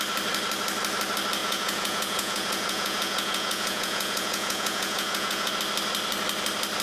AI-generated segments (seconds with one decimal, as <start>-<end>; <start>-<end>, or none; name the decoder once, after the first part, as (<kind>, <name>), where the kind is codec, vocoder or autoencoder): 1.4-5.5 (vocoder, Vocos)